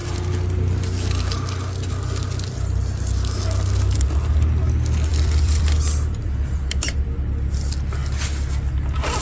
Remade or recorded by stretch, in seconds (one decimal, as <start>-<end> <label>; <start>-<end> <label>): 0.0-5.1 recorded; 5.1-7.0 remade; 7.0-9.2 recorded